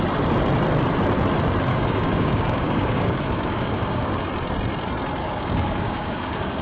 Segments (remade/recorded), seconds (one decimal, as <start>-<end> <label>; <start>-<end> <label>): 0.0-1.7 recorded; 1.7-4.2 remade; 4.2-5.2 recorded; 5.2-6.6 remade